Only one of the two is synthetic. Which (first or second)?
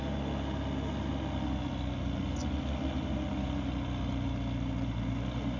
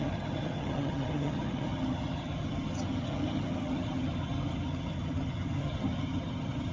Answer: second